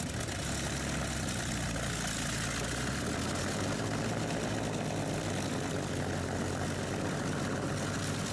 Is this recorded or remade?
recorded